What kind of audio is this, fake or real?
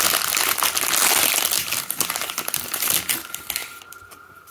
real